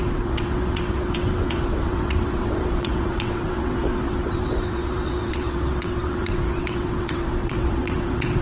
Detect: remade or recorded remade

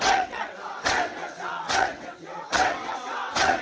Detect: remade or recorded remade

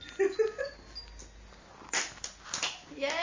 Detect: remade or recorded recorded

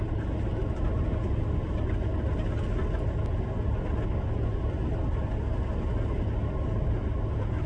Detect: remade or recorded recorded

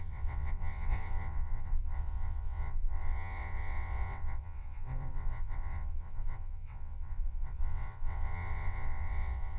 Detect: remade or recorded remade